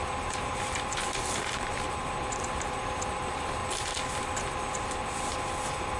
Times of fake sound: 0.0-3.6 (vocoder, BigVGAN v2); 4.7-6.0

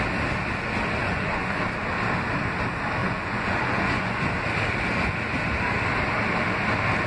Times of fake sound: 1.0-1.6 (vocoder, Vocos); 3.0-4.3

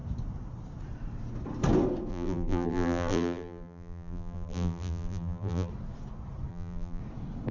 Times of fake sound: 2.1-5.7 (vocoder, BigVGAN v2); 6.5-7.0

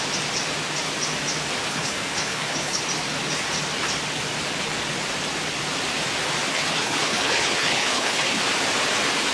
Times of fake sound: 1.6-2.8 (codec, HILCodec); 6.5-8.4